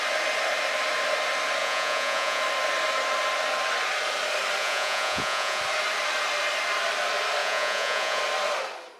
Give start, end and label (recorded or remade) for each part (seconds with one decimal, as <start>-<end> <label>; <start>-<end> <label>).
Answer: 0.0-1.6 recorded; 1.6-2.4 remade; 2.4-4.6 recorded; 4.6-5.6 remade; 5.6-7.4 recorded; 7.4-8.2 remade; 8.2-9.0 recorded